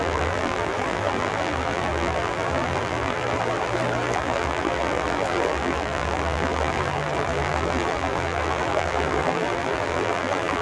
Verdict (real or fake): fake